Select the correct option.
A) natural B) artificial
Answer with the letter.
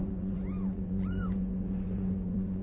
B